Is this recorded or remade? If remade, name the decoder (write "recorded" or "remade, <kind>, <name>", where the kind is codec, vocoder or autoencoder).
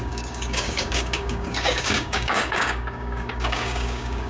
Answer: remade, codec, DAC